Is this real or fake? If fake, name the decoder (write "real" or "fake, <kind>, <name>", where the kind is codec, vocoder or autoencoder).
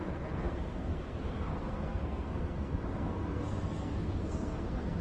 fake, codec, SNAC